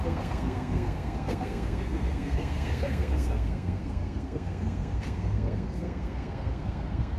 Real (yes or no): no